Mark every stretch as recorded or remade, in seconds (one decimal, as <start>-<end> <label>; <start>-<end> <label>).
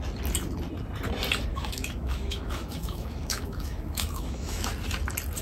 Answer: 0.0-1.5 recorded; 1.5-4.7 remade; 4.7-5.4 recorded